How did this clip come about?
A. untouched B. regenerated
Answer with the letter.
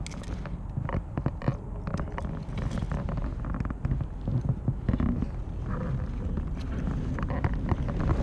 A